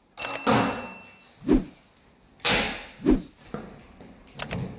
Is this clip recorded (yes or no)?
yes